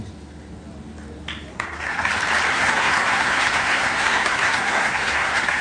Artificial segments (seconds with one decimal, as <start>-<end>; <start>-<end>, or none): 1.5-2.1; 2.5-5.6